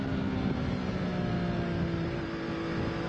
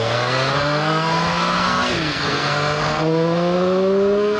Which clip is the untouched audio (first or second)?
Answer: first